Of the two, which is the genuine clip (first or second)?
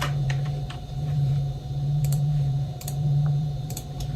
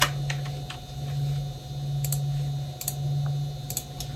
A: second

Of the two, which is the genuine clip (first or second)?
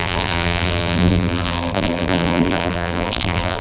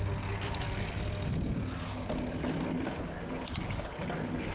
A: second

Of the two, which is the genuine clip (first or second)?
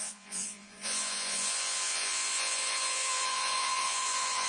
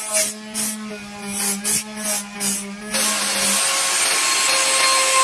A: second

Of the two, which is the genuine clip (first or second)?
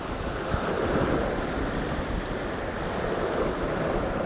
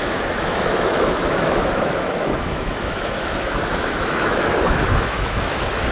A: first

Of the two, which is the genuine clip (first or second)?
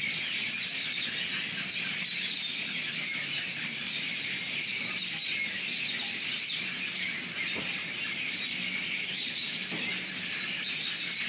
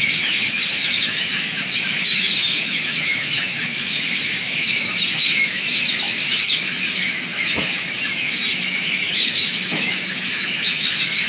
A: first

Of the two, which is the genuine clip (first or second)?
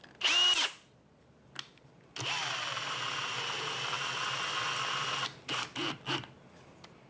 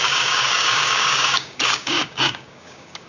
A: first